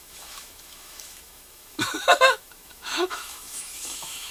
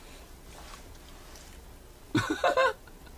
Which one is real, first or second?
second